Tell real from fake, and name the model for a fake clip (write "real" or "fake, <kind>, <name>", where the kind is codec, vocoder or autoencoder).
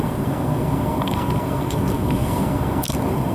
fake, codec, SNAC